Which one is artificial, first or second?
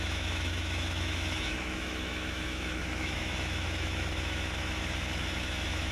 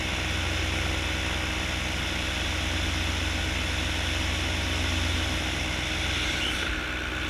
first